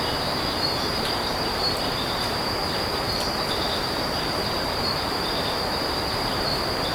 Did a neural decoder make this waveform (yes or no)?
yes